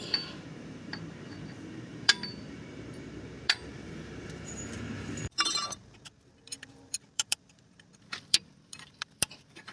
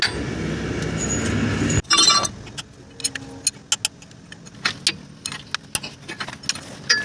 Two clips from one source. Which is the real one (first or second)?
second